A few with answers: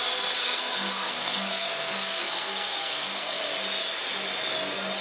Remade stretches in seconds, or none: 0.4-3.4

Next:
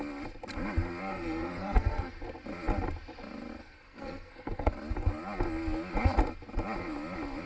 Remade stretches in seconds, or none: 1.1-2.1; 3.6-4.7

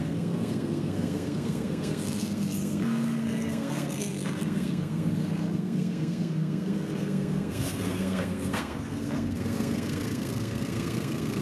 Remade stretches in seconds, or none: 0.0-11.4

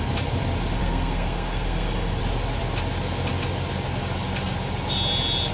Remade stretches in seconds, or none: 0.8-2.2

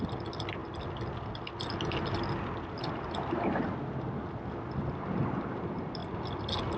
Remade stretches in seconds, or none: none

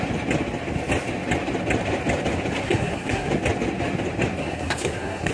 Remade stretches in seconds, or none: 2.6-3.3; 4.4-5.3